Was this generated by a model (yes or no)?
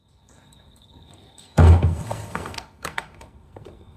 yes